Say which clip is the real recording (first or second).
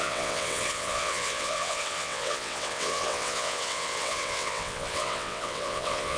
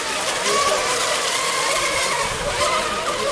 second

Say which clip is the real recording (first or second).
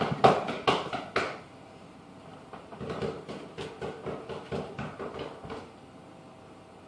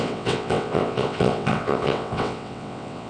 first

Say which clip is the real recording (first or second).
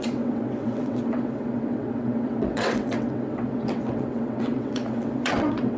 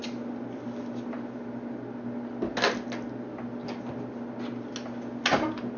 second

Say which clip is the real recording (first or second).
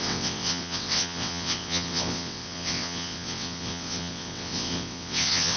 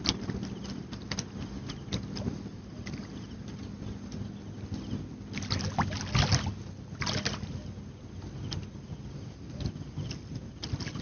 second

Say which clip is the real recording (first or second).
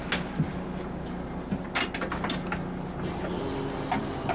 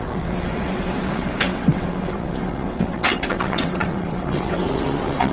first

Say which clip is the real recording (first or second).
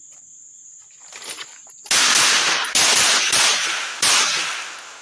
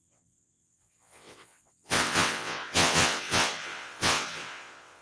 first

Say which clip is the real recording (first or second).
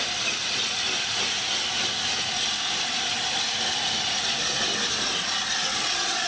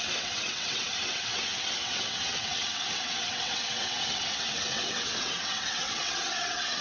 first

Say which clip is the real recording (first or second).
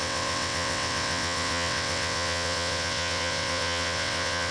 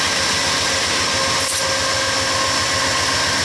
second